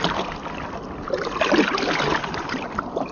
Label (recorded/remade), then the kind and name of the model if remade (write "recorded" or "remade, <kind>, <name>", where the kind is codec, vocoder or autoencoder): recorded